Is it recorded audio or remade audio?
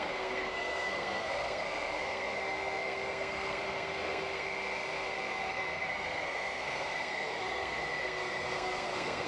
remade